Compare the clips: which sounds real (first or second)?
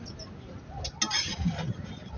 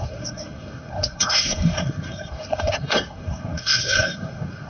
first